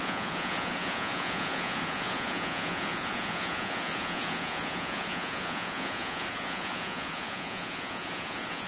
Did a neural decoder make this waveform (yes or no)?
yes